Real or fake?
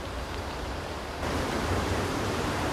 fake